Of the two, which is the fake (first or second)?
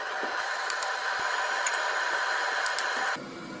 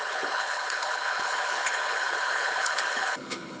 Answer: second